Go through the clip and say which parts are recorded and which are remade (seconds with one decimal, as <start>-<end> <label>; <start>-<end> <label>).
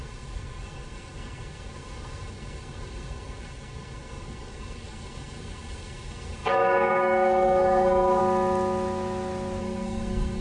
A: 0.0-8.2 remade; 8.2-9.6 recorded; 9.6-10.4 remade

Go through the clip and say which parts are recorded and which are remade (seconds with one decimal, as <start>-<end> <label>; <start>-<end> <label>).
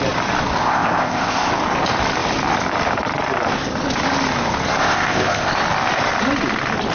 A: 0.0-0.6 recorded; 0.6-1.5 remade; 1.5-4.8 recorded; 4.8-5.5 remade; 5.5-6.9 recorded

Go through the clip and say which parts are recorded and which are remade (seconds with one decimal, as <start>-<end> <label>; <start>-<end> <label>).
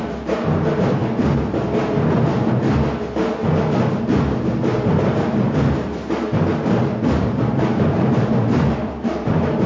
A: 0.0-6.0 recorded; 6.0-9.7 remade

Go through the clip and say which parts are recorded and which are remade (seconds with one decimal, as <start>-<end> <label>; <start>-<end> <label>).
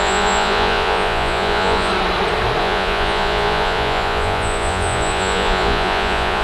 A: 0.0-1.9 remade; 1.9-2.6 recorded; 2.6-6.4 remade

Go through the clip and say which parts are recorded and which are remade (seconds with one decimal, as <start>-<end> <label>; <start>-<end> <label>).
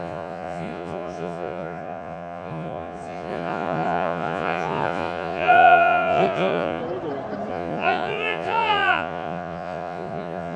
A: 0.0-6.8 remade; 6.8-7.5 recorded; 7.5-10.6 remade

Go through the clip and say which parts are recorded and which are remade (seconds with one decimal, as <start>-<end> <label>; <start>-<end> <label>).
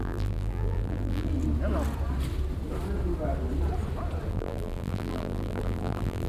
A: 0.0-1.3 remade; 1.3-4.3 recorded; 4.3-6.3 remade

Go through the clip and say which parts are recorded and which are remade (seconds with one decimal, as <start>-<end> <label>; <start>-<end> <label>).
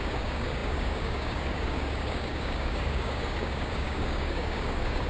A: 0.0-5.1 remade